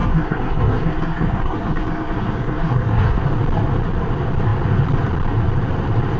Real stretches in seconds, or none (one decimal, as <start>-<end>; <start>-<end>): 3.2-6.2